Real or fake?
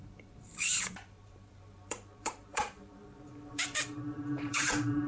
fake